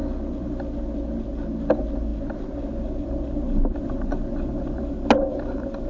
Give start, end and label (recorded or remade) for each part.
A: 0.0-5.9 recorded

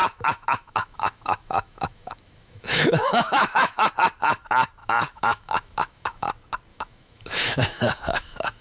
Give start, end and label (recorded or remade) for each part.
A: 0.0-3.9 remade; 3.9-4.8 recorded; 4.8-6.3 remade; 6.3-6.7 recorded; 6.7-8.6 remade